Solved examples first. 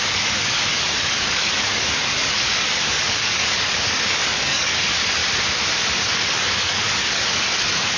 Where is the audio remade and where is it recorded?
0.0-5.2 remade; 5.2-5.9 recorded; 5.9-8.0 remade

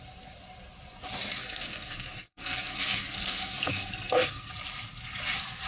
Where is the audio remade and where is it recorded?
0.0-1.4 recorded; 1.4-4.5 remade; 4.5-5.7 recorded